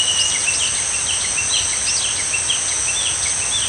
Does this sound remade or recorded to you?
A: recorded